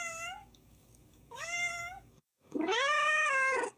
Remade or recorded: remade